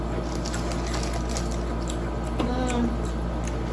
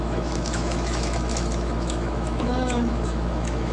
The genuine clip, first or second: first